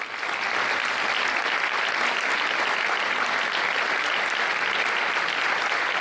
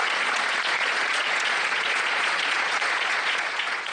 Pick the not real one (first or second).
second